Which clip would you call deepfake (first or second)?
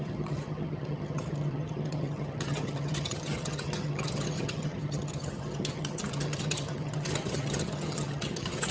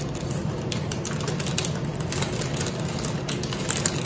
first